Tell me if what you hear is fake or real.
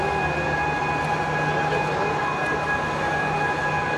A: real